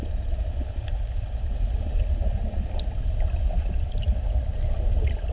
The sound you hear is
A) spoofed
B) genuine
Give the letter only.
B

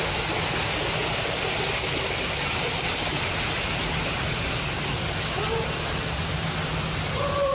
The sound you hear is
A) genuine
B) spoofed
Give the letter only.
A